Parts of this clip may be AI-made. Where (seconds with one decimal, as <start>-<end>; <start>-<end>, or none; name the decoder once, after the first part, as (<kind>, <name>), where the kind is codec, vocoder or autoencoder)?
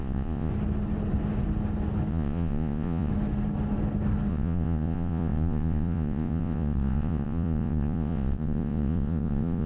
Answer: 0.0-0.5 (vocoder, Vocos); 2.1-3.1; 4.3-9.7